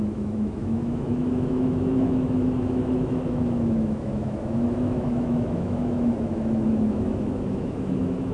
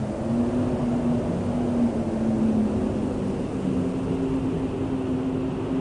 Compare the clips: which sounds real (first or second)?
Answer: second